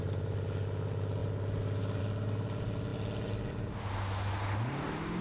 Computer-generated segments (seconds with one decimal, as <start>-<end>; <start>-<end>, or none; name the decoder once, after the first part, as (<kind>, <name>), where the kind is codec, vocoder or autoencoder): none